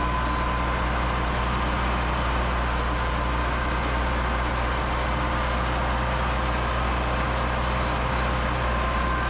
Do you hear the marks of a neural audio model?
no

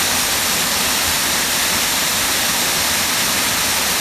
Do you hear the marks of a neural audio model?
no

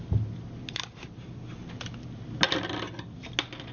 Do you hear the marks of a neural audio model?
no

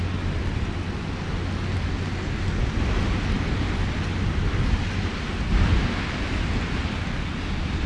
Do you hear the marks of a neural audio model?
no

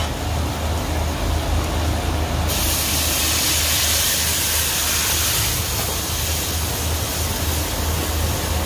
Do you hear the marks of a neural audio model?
no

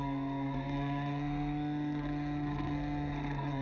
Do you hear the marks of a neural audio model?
yes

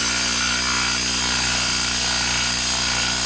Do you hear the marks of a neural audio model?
no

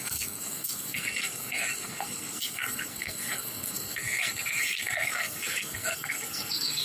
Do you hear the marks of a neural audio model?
yes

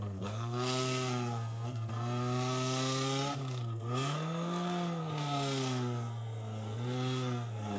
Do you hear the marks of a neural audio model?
yes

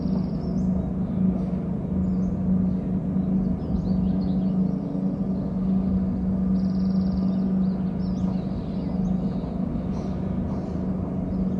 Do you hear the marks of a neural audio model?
no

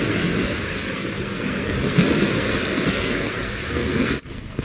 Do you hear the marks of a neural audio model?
yes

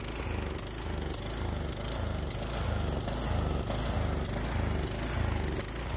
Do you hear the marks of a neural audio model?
no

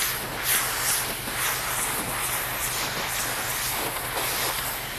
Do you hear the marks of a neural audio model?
no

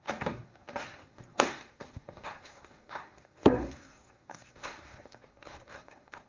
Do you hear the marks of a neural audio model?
yes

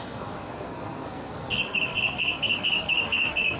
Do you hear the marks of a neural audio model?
yes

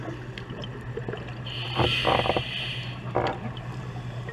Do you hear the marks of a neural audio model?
no